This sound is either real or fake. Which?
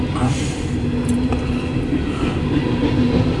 real